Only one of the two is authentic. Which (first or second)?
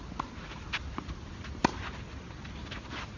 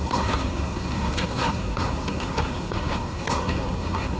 first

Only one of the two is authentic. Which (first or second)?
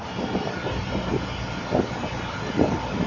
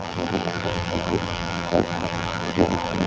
first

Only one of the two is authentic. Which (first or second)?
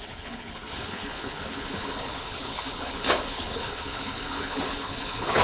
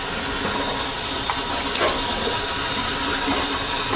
second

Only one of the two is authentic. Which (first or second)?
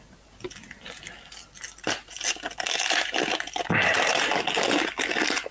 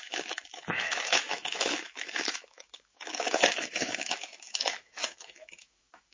first